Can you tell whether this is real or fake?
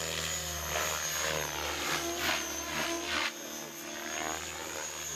real